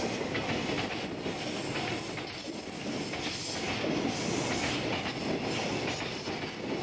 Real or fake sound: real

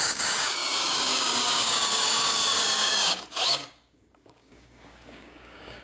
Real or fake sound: fake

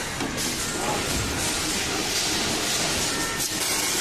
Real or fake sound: real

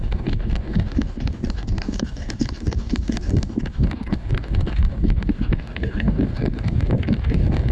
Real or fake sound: fake